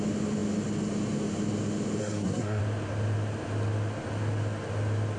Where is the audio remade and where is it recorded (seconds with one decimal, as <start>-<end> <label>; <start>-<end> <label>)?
0.0-2.0 recorded; 2.0-2.6 remade; 2.6-5.2 recorded